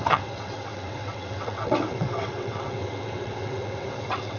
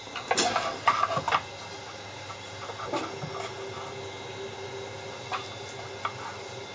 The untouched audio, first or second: second